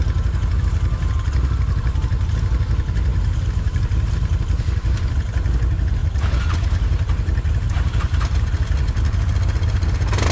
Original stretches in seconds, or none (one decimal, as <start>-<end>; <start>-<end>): 0.0-3.1; 3.8-6.0; 8.5-10.3